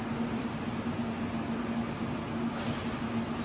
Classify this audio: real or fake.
real